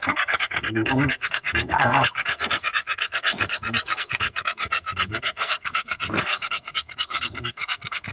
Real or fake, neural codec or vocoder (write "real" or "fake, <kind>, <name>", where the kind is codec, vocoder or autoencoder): fake, codec, SNAC